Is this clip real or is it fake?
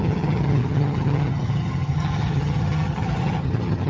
fake